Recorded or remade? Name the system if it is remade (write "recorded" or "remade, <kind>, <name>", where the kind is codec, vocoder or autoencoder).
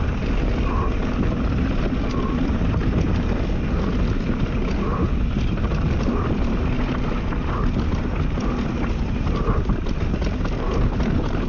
recorded